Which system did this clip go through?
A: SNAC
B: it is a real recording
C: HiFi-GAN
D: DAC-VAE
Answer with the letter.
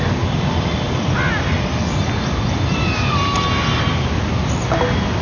B